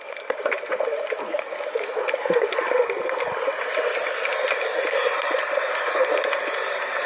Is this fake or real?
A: real